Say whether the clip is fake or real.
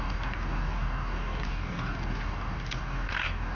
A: fake